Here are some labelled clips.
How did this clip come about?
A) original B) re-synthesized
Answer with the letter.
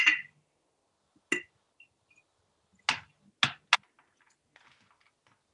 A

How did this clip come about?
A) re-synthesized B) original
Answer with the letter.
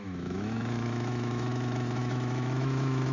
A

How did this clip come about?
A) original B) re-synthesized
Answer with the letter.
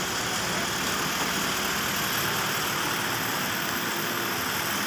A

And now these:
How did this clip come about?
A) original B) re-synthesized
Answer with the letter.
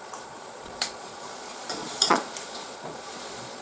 B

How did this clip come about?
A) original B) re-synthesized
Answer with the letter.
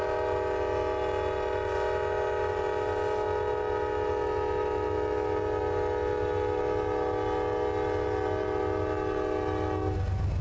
A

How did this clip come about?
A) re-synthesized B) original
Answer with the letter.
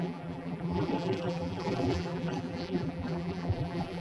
A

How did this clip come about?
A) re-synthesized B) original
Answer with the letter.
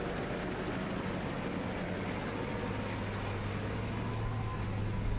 B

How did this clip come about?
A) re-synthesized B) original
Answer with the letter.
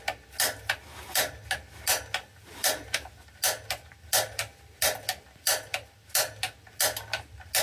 B